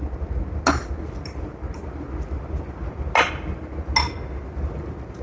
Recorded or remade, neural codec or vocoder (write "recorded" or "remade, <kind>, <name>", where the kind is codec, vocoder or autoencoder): recorded